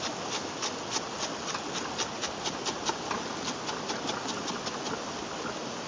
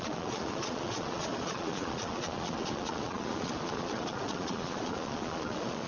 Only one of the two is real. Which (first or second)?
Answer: first